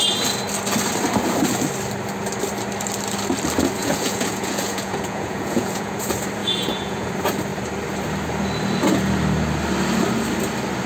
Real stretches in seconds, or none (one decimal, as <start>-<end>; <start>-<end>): 0.0-3.8; 6.0-6.4; 7.1-10.9